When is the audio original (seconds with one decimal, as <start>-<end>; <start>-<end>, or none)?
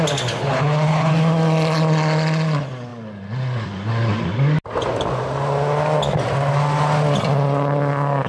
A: 0.0-0.4; 1.1-8.3